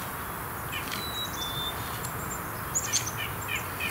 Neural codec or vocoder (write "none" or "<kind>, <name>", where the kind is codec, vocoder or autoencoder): none